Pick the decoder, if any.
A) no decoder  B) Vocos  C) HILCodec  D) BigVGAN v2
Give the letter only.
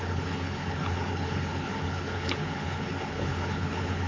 C